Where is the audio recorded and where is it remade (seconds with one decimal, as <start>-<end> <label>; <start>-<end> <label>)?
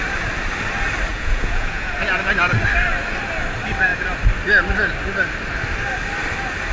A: 0.0-1.1 recorded; 1.1-2.0 remade; 2.0-6.7 recorded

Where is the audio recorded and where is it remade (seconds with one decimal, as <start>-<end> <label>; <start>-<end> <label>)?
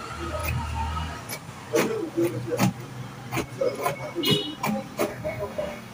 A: 0.0-5.1 recorded; 5.1-5.9 remade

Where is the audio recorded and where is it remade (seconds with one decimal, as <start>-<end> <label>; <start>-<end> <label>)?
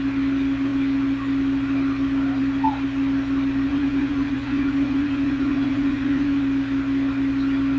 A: 0.0-3.7 recorded; 3.7-6.4 remade; 6.4-7.8 recorded